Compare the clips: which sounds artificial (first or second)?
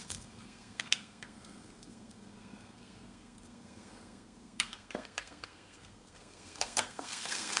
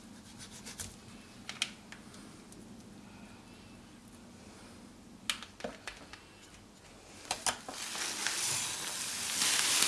first